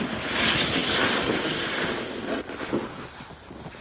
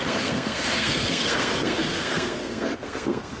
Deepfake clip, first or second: second